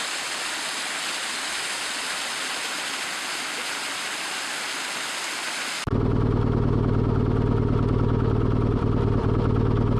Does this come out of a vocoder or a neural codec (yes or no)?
no